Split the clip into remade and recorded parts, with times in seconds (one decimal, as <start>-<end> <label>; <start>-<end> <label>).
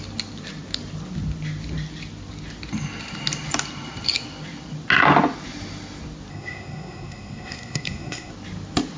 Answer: 0.0-6.3 recorded; 6.3-8.3 remade; 8.3-9.0 recorded